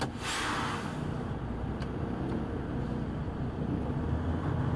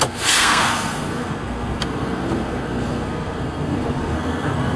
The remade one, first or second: second